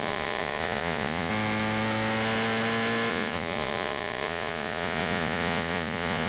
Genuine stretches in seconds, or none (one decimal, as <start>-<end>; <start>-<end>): 1.3-3.1